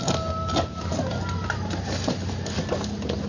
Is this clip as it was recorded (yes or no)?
yes